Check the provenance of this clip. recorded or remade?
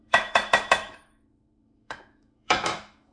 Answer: remade